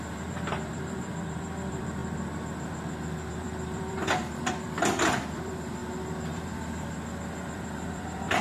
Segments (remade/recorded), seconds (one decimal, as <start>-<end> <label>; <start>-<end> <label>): 0.0-2.0 remade; 2.0-3.3 recorded; 3.3-5.8 remade; 5.8-6.3 recorded; 6.3-8.4 remade